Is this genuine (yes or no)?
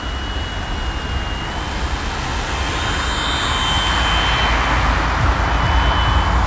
yes